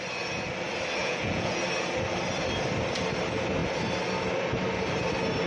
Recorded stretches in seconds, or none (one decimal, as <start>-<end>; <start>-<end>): 0.0-1.0; 1.6-5.5